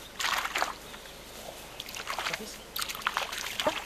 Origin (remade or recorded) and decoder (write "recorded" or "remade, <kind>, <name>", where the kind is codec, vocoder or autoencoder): recorded